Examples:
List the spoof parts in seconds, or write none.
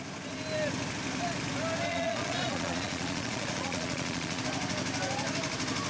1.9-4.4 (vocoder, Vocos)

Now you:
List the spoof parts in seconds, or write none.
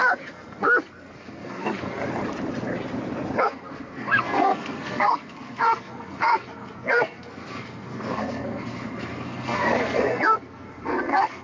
0.0-2.0 (codec, SNAC); 3.4-11.4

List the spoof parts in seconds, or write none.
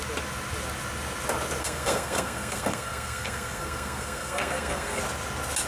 1.6-5.0 (codec, SNAC)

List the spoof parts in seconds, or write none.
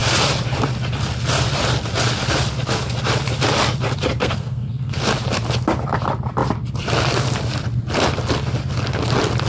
4.2-4.9 (codec, SNAC)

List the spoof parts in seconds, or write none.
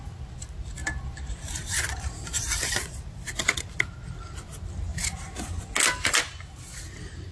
0.8-3.8 (vocoder, BigVGAN v2)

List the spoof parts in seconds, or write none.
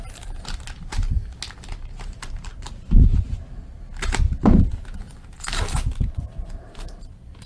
2.5-3.8 (vocoder, BigVGAN v2)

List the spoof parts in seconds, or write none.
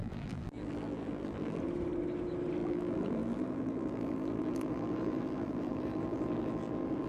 0.0-1.6 (vocoder, BigVGAN v2); 2.6-7.1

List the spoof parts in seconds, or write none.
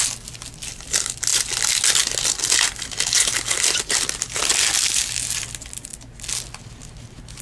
none